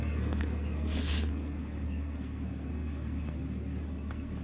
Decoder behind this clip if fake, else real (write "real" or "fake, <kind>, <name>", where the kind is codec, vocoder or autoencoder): fake, codec, SNAC